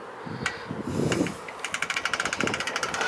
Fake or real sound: real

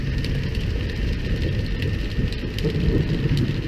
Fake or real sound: real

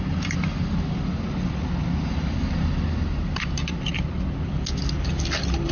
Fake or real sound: real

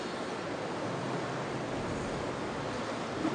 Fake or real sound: real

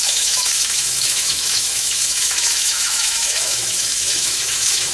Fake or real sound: fake